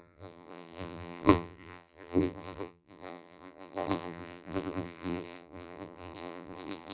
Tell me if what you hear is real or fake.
fake